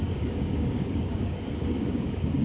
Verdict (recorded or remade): remade